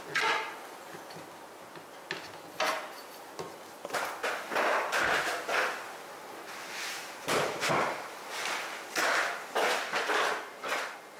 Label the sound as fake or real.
real